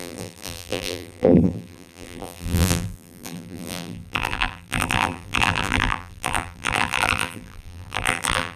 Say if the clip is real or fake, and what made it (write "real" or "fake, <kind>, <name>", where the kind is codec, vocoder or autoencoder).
fake, vocoder, BigVGAN v2